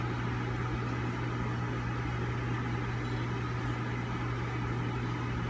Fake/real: real